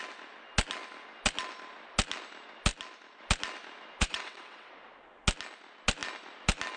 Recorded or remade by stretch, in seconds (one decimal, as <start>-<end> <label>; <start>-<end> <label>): 0.0-4.0 recorded; 4.0-4.7 remade; 4.7-6.8 recorded